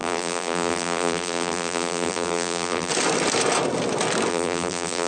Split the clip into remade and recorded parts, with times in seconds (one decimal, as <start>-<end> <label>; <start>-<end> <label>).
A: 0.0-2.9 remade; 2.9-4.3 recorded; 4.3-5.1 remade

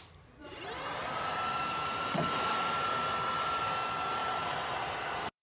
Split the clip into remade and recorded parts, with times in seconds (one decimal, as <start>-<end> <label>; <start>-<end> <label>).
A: 0.0-0.4 recorded; 0.4-3.6 remade; 3.6-4.2 recorded; 4.2-5.4 remade

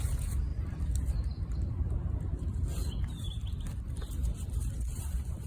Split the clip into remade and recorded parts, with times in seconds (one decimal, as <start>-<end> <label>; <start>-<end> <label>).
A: 0.0-0.5 recorded; 0.5-3.8 remade; 3.8-4.2 recorded; 4.2-5.0 remade; 5.0-5.5 recorded

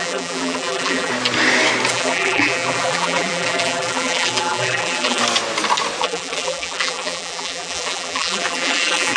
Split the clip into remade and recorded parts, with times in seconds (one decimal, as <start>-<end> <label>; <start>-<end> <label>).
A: 0.0-1.1 remade; 1.1-1.9 recorded; 1.9-5.2 remade; 5.2-6.0 recorded; 6.0-9.2 remade

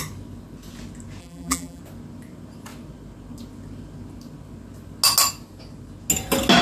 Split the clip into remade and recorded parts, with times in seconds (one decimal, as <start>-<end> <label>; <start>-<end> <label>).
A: 0.0-1.2 recorded; 1.2-1.8 remade; 1.8-6.6 recorded